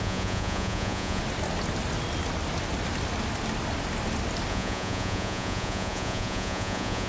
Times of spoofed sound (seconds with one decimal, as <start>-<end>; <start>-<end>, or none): 0.0-1.2; 4.5-7.1